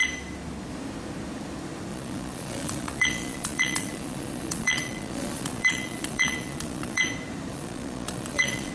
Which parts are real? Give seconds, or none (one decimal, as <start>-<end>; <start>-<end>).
0.0-1.9; 7.1-7.5